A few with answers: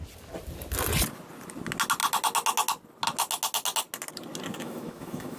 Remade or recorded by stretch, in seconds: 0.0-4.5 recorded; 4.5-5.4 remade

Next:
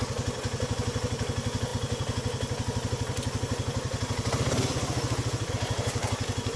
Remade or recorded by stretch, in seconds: 0.0-6.6 recorded

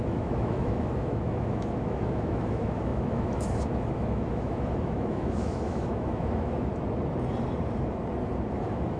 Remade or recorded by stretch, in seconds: 0.0-6.7 remade; 6.7-8.5 recorded; 8.5-9.0 remade